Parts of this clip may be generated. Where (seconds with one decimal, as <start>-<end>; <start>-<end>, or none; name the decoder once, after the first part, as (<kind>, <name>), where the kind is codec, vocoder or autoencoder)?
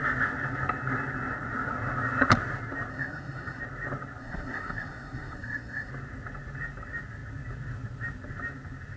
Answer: 2.9-3.6 (codec, SNAC); 4.2-5.9